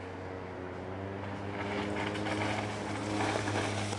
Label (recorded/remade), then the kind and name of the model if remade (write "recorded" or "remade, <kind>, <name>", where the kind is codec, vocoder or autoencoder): recorded